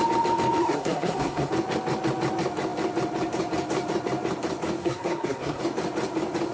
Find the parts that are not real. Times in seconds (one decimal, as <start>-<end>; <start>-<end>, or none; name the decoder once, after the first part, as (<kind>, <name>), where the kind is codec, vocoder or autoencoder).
0.6-1.5 (codec, SNAC); 4.8-5.6